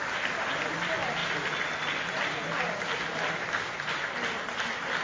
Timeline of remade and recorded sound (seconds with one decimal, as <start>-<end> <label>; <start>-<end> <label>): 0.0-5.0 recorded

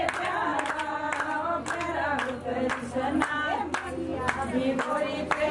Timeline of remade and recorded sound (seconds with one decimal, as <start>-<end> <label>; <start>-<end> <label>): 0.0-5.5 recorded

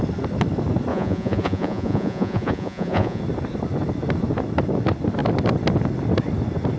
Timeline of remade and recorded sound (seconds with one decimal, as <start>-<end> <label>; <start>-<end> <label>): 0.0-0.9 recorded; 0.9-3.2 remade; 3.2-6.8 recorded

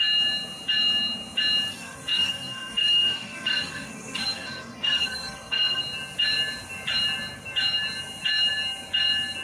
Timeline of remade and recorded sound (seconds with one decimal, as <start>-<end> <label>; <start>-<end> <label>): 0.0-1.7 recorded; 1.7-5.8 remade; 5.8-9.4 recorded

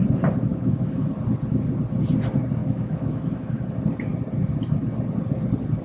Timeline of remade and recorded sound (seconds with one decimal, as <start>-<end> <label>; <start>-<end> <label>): 0.0-0.5 recorded; 0.5-1.1 remade; 1.1-2.6 recorded; 2.6-3.5 remade; 3.5-5.8 recorded

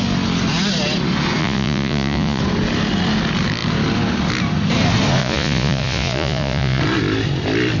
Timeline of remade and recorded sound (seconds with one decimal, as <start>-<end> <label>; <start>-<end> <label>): 0.0-1.4 recorded; 1.4-2.4 remade; 2.4-5.2 recorded; 5.2-6.8 remade; 6.8-7.8 recorded

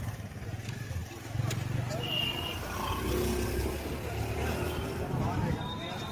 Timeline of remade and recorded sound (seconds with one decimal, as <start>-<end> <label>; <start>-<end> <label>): 0.0-6.1 recorded

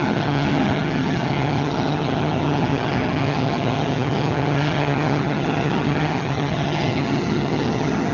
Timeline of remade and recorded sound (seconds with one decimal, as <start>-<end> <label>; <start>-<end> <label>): 0.0-8.1 remade